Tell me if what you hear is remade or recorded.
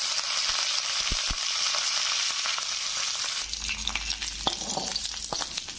recorded